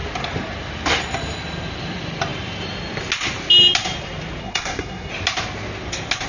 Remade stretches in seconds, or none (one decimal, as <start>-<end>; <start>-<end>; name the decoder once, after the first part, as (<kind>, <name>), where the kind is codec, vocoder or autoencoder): 4.4-5.1 (codec, SNAC)